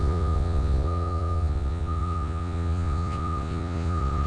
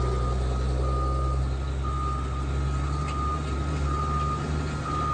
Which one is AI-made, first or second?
first